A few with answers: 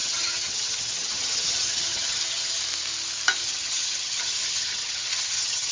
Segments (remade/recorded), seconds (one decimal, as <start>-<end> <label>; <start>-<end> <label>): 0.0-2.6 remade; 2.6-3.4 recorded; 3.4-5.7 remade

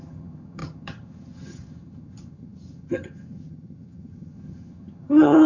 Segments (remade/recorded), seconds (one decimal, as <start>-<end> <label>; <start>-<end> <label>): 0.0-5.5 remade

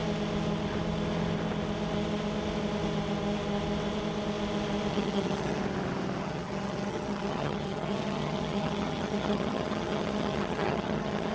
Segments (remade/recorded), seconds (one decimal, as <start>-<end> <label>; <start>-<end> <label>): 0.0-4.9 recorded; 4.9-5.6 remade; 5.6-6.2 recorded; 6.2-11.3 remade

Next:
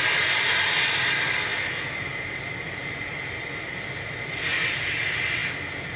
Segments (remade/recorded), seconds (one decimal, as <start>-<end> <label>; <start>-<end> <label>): 0.0-6.0 recorded